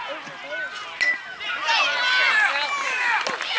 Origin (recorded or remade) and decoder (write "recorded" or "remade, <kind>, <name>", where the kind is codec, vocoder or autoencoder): recorded